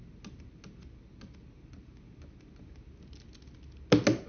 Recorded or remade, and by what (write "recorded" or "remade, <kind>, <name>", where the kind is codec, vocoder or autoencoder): recorded